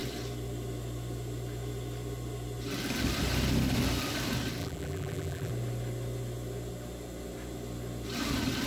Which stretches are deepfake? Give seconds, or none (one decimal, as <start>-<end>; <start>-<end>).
4.6-5.5